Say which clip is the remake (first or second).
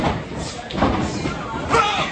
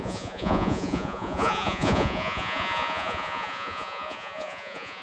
second